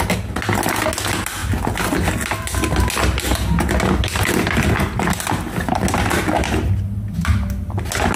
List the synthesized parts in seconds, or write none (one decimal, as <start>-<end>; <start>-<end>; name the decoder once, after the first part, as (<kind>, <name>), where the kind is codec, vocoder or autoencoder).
none